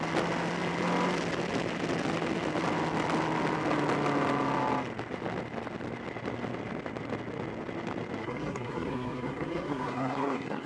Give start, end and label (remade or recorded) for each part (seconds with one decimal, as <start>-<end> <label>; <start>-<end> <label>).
0.0-8.2 recorded; 8.2-10.7 remade